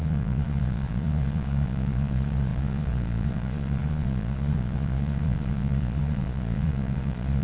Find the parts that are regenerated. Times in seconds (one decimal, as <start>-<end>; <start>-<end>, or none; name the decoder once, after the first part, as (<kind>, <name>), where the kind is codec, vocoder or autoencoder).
0.0-7.4 (vocoder, Vocos)